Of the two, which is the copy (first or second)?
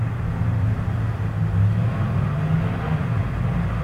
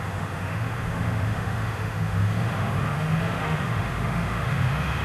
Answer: second